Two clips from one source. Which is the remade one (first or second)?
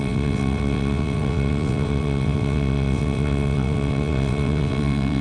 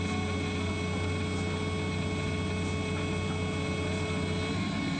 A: first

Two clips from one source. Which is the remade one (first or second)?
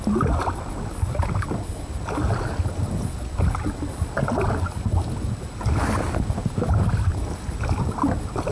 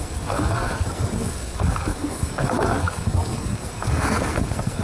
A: second